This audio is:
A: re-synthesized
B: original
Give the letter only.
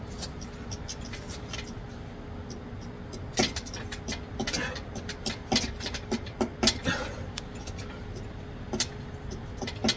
B